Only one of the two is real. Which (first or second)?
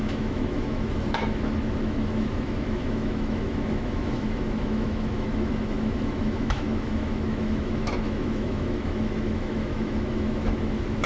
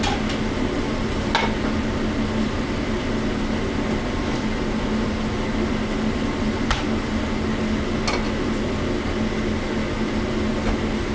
second